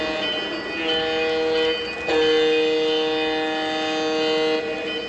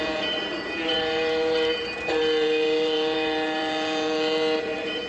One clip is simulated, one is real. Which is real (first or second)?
first